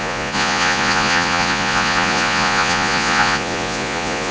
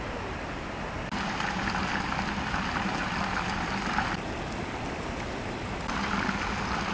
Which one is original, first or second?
second